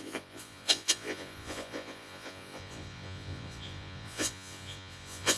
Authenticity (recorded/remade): remade